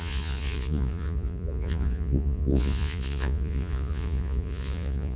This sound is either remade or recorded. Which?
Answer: remade